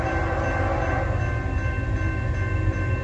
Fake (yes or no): no